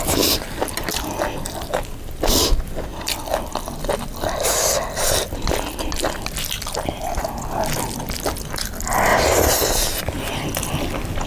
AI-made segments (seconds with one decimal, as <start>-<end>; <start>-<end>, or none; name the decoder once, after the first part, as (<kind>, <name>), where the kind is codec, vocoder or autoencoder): 2.9-4.1 (vocoder, BigVGAN v2); 9.1-11.3

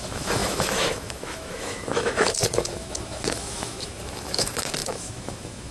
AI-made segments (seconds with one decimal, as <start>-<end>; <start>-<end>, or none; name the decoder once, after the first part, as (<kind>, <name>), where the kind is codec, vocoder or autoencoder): 0.0-5.7 (autoencoder, DAC-VAE)

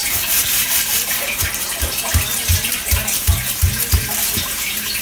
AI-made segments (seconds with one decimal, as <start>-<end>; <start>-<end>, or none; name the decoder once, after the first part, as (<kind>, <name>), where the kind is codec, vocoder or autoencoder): 0.0-3.0 (vocoder, BigVGAN v2)

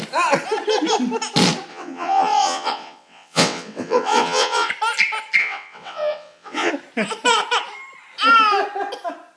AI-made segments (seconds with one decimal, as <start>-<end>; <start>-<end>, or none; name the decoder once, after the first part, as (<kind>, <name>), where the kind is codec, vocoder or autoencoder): 1.7-4.7 (vocoder, WaveNeXt); 5.4-6.7

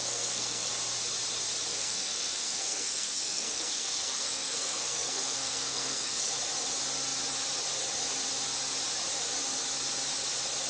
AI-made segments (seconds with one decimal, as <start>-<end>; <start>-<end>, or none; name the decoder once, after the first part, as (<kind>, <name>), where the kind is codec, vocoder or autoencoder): 0.0-0.7 (codec, SNAC); 1.7-6.3

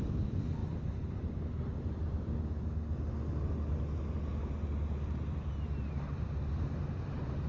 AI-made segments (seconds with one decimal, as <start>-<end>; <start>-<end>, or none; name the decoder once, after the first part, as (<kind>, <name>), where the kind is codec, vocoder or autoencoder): none